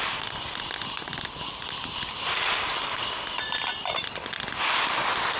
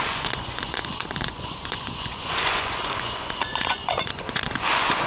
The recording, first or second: first